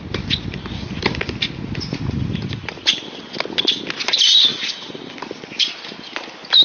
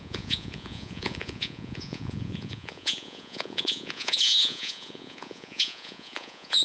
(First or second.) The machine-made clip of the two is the second